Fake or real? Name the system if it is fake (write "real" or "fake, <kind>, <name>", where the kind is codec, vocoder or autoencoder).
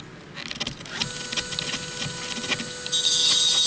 real